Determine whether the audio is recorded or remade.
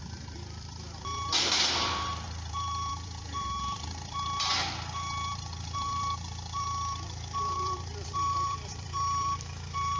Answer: remade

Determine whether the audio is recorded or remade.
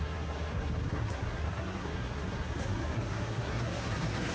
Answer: remade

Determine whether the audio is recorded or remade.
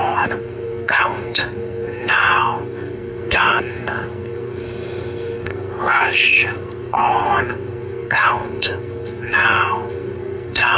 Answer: remade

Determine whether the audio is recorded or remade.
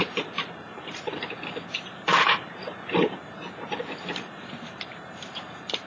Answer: remade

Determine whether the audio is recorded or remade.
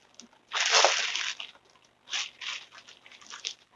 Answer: recorded